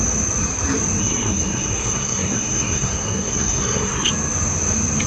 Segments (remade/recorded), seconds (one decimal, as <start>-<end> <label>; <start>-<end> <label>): 0.0-1.0 recorded; 1.0-4.1 remade; 4.1-5.1 recorded